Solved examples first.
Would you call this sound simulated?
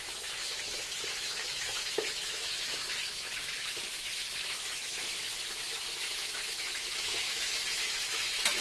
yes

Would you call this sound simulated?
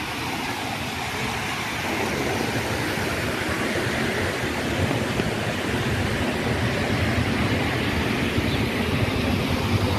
no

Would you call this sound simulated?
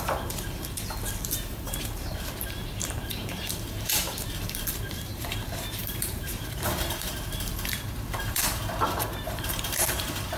yes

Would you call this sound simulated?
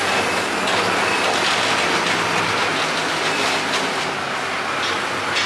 no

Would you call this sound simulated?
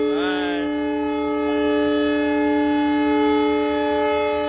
no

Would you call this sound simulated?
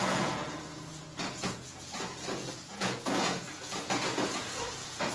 yes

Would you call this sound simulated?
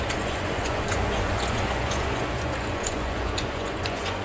yes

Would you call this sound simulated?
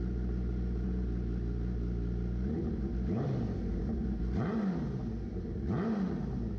no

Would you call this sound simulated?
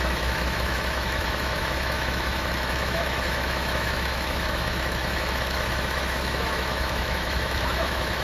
yes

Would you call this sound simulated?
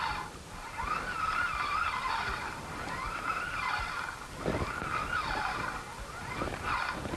no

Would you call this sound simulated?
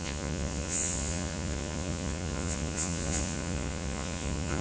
yes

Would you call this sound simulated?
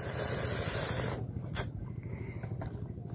no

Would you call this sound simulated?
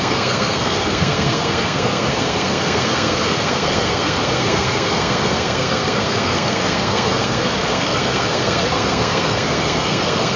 yes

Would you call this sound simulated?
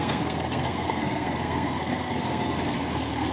yes